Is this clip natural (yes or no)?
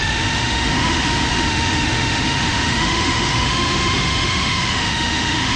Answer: no